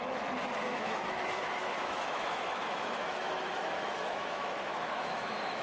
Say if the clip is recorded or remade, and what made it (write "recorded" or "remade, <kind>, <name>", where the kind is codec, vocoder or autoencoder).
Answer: remade, autoencoder, DAC-VAE